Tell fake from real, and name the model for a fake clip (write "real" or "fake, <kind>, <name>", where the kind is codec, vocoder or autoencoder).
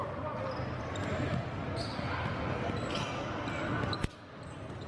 real